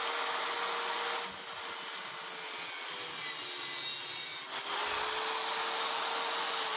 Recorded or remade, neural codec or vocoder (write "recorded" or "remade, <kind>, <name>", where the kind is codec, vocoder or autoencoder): recorded